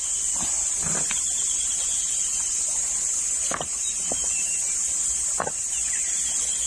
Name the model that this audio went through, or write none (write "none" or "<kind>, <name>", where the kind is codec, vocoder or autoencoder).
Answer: none